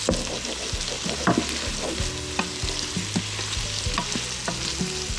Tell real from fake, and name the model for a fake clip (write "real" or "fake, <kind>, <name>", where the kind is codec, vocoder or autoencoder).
real